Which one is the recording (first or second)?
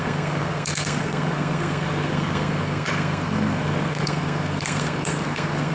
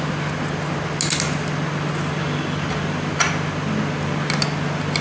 second